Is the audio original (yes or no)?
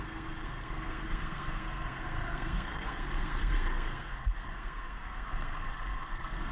no